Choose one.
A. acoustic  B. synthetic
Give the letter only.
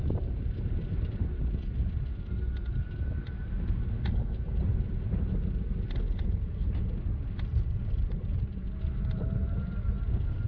A